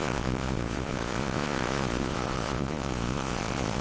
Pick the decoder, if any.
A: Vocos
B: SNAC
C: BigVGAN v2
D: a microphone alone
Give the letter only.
A